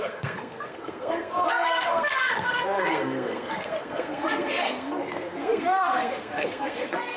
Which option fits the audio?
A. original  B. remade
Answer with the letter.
B